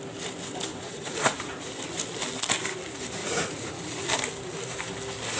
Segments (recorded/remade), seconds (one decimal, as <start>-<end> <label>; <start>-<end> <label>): 0.0-0.7 recorded; 0.7-1.7 remade; 1.7-3.2 recorded; 3.2-4.0 remade; 4.0-5.4 recorded